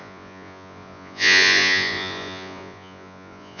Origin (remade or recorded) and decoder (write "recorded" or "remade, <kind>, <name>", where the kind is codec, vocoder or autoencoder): remade, vocoder, Vocos